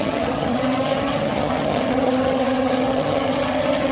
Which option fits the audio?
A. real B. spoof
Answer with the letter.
B